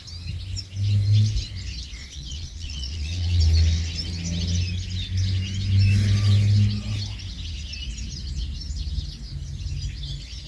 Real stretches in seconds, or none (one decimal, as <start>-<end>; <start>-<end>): 0.0-2.0; 3.4-10.5